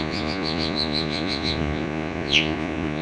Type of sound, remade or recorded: remade